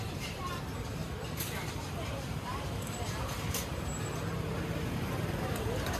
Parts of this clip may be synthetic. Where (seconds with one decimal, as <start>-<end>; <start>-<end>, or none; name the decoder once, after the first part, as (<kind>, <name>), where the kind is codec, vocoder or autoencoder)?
0.0-1.0 (vocoder, BigVGAN v2); 1.5-6.0